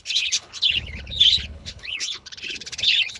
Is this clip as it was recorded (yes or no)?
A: no